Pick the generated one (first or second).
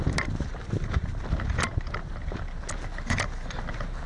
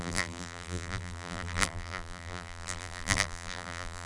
second